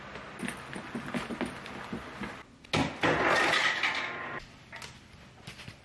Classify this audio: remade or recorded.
recorded